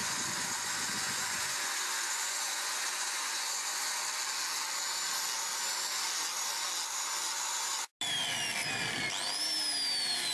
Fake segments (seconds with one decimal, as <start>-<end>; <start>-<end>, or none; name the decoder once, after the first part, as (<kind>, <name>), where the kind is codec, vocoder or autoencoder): 0.0-4.0 (vocoder, Vocos)